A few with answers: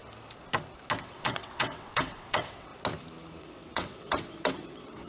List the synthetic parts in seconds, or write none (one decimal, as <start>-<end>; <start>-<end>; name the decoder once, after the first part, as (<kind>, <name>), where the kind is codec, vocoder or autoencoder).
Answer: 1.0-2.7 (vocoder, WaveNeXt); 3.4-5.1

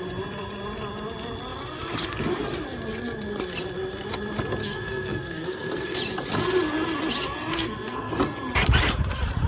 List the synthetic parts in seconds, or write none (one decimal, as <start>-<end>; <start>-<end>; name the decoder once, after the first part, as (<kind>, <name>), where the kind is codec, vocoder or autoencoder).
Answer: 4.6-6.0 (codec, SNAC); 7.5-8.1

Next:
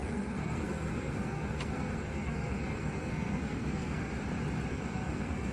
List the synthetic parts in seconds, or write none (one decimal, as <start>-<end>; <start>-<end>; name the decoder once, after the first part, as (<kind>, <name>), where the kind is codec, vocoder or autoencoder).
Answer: 0.0-4.1 (codec, SNAC); 4.7-5.5

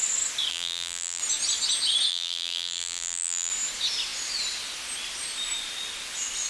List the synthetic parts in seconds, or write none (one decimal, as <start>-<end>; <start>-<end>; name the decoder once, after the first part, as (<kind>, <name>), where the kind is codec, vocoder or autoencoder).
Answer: 0.5-1.2 (vocoder, BigVGAN v2); 2.1-3.5

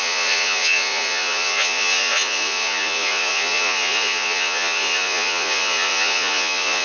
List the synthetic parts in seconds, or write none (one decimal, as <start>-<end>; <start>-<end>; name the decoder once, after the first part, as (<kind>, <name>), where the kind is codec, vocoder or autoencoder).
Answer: 0.0-6.8 (vocoder, Vocos)

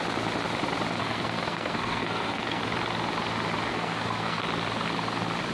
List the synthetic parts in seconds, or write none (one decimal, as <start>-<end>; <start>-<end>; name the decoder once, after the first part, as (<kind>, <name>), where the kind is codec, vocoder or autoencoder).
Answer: 1.0-2.6 (codec, SNAC); 3.7-4.4

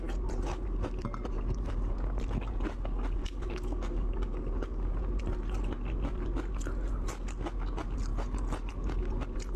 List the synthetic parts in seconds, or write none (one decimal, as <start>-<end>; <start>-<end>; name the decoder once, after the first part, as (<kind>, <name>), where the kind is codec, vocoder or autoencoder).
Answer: 3.2-4.9 (codec, DAC)

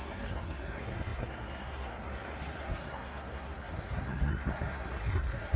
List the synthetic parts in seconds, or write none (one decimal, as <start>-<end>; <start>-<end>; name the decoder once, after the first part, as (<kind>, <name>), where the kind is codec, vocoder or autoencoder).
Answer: 0.0-5.6 (codec, SNAC)